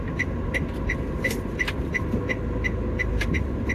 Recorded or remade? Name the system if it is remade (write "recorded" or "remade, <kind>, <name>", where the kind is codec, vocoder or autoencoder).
recorded